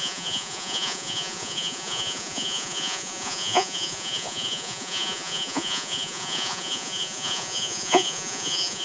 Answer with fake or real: fake